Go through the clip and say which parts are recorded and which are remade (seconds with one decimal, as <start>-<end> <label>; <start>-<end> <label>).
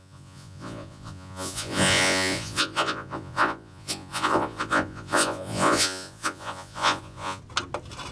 0.0-7.4 remade; 7.4-8.1 recorded